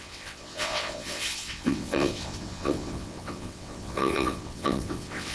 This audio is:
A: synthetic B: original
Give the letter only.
A